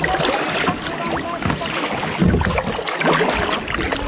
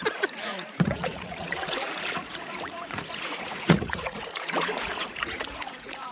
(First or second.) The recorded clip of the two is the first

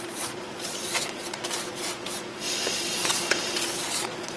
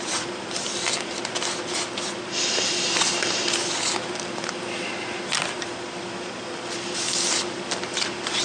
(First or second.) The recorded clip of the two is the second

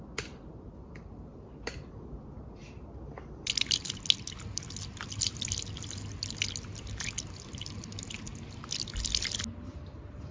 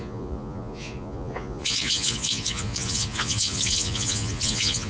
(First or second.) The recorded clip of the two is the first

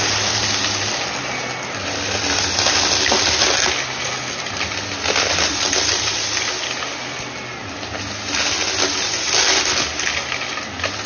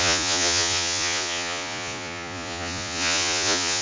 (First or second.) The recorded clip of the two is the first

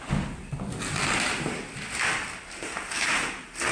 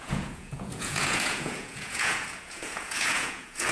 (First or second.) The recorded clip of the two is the first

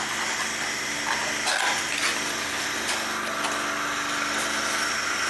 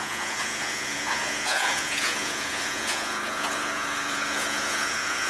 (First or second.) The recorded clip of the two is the first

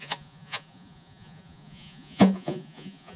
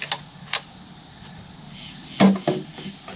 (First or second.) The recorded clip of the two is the second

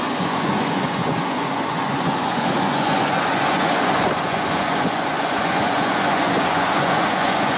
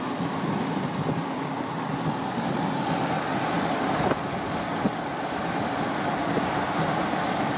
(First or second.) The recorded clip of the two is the second